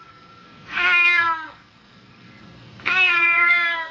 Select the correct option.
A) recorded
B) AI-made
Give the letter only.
B